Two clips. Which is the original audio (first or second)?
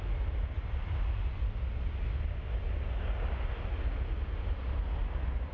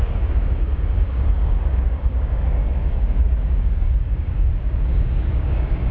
first